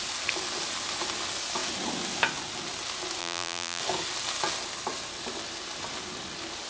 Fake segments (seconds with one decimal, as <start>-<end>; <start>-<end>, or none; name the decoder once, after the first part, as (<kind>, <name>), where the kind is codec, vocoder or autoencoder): 3.2-3.8 (vocoder, BigVGAN v2)